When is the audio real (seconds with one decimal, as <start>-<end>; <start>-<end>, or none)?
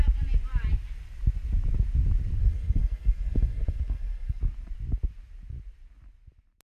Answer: 0.0-2.4; 4.4-6.7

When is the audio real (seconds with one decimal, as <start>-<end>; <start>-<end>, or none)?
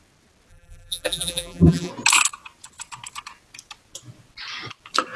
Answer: 0.0-0.5; 1.9-5.2